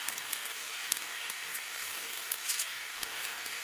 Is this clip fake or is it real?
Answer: fake